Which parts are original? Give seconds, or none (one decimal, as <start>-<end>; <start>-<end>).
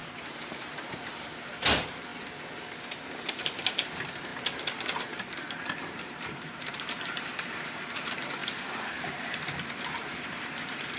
2.1-3.3; 4.3-5.0